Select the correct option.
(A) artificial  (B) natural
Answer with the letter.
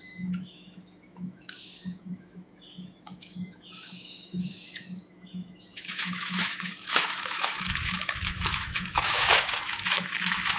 A